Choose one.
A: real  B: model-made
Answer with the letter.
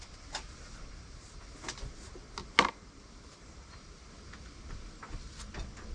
A